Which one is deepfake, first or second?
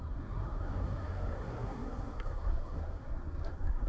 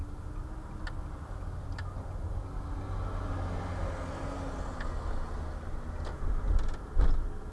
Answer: first